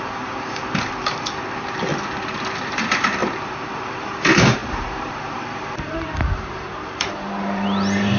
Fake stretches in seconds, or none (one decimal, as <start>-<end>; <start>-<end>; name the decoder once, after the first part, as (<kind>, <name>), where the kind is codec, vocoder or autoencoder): 0.0-1.9 (vocoder, BigVGAN v2); 2.5-8.2